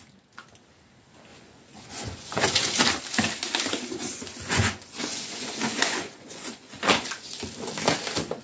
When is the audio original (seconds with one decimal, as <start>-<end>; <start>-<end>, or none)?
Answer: 0.0-1.3; 2.8-4.0; 7.4-8.4